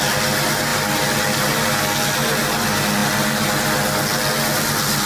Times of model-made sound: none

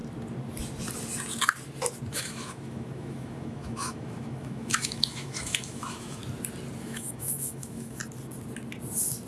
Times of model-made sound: 2.1-6.2; 6.8-8.0

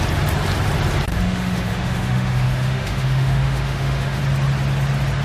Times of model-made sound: 1.1-4.2

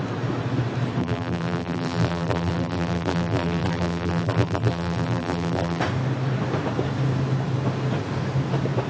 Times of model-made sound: 1.0-5.8

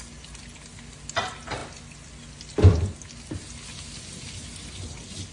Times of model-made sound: none

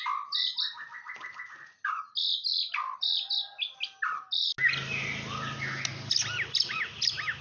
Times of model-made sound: none

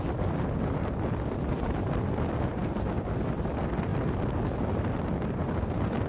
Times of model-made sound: none

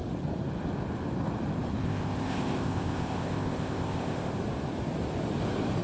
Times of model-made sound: 1.8-4.3